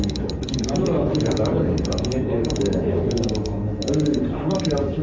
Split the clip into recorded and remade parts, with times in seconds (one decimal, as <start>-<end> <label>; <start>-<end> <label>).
0.0-5.0 recorded